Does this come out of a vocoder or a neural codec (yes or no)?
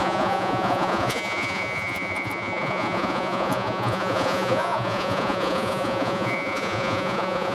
yes